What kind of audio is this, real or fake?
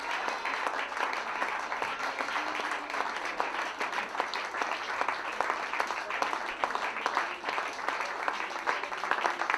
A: real